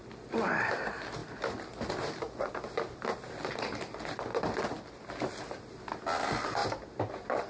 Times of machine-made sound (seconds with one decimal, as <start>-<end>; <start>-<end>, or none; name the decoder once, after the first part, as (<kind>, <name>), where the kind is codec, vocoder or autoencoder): none